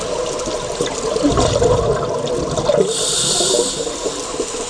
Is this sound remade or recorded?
recorded